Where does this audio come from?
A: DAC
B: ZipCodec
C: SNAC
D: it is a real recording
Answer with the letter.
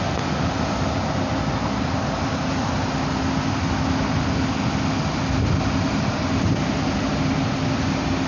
D